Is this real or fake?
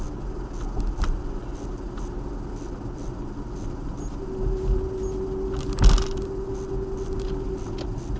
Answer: real